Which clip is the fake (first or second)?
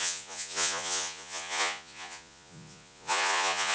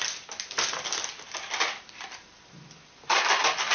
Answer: first